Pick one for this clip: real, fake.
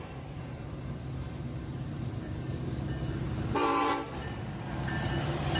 fake